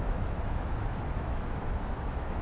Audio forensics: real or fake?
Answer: fake